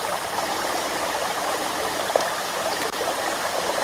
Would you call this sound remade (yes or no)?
no